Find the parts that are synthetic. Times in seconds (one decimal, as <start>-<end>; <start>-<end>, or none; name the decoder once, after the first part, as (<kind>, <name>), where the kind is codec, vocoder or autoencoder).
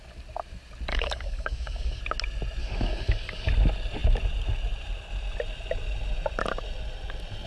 0.9-2.0 (codec, DAC); 2.6-3.5